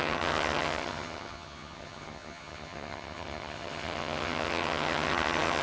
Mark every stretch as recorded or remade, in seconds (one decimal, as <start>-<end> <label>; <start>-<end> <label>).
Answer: 0.0-5.6 remade